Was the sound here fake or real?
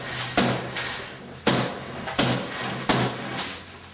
real